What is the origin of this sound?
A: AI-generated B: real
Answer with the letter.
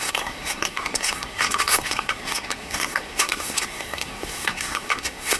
A